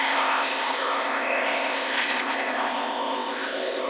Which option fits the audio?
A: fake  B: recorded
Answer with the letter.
A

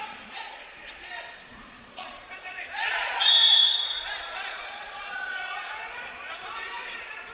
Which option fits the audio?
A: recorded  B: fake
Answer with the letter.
B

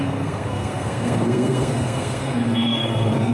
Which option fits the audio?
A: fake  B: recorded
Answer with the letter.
A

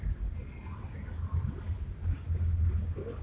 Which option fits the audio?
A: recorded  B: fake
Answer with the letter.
A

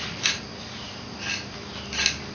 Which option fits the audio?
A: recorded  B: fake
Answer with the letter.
A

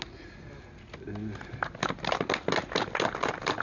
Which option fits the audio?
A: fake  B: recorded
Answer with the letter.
B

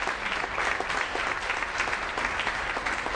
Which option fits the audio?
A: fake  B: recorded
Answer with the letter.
B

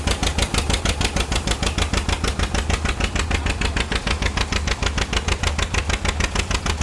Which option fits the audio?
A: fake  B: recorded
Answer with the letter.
B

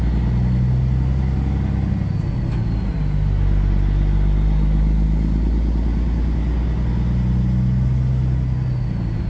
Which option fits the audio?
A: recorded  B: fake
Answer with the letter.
A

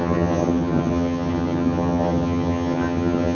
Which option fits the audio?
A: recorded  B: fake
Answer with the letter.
B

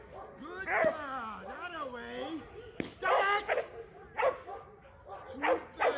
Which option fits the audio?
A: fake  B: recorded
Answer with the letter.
B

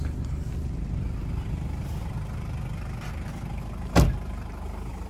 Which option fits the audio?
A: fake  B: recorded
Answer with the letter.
B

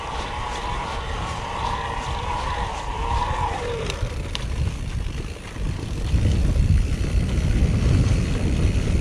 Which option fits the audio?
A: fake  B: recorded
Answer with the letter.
A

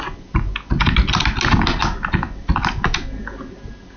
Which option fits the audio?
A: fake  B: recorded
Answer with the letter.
B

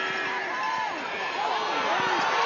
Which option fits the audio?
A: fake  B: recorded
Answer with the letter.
B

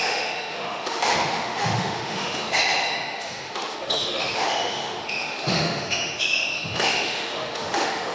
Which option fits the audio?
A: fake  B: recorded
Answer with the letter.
A